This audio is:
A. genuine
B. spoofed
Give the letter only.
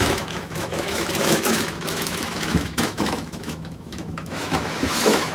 B